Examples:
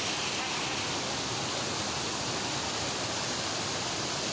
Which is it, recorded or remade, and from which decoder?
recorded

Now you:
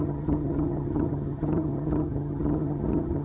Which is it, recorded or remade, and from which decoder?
remade, vocoder, HiFi-GAN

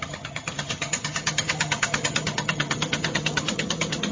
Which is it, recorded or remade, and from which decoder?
remade, vocoder, HiFi-GAN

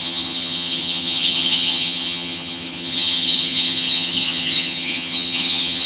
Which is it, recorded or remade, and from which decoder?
remade, vocoder, HiFi-GAN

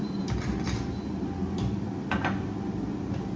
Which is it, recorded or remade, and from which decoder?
recorded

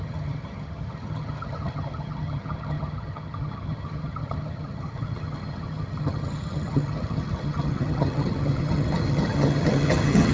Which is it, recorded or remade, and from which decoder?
remade, vocoder, HiFi-GAN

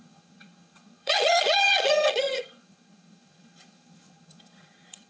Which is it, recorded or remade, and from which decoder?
remade, vocoder, HiFi-GAN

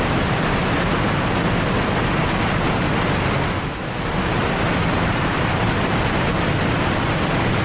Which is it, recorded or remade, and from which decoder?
recorded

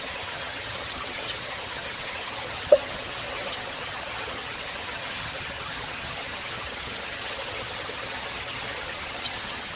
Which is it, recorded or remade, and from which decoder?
remade, vocoder, HiFi-GAN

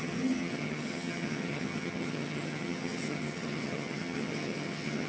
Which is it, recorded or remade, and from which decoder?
remade, vocoder, HiFi-GAN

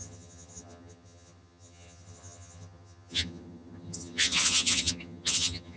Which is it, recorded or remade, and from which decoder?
remade, vocoder, HiFi-GAN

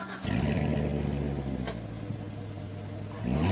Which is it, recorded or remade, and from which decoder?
recorded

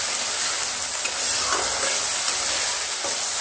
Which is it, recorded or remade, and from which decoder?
recorded